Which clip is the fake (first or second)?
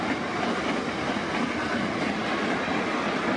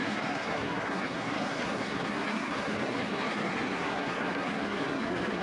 second